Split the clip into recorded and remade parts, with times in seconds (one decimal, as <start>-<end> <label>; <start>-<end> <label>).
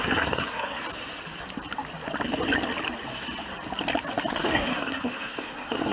0.0-0.8 remade; 0.8-4.3 recorded; 4.3-5.9 remade